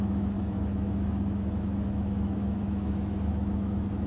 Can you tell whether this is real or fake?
fake